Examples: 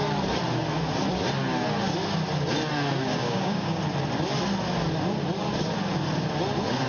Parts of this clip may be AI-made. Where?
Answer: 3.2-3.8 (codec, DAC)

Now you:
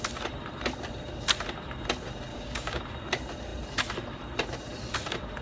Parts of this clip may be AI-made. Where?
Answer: 2.3-2.8 (codec, DAC)

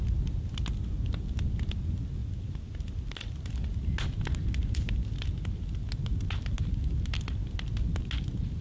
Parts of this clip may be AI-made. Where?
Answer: 2.2-3.1 (vocoder, BigVGAN v2); 4.6-5.7